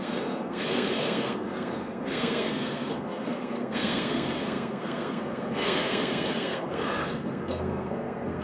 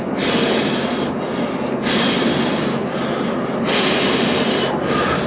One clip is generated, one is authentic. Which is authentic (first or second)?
second